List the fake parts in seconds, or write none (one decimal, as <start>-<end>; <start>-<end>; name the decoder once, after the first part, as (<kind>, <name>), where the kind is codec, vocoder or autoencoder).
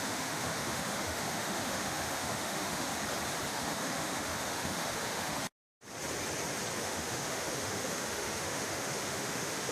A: 0.0-2.9 (autoencoder, DAC-VAE); 3.5-5.4; 6.8-9.7